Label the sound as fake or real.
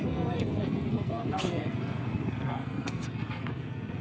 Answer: fake